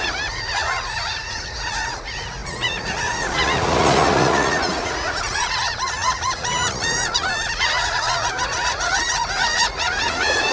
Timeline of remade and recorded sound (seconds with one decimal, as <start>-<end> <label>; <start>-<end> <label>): 0.0-10.5 remade